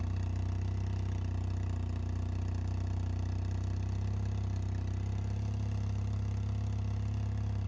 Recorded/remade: recorded